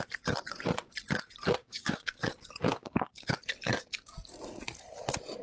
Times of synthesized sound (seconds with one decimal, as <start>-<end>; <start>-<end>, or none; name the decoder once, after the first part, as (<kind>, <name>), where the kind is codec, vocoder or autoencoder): 1.6-2.2 (codec, DAC); 2.7-3.3